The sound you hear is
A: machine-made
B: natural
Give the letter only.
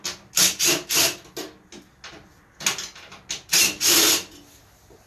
B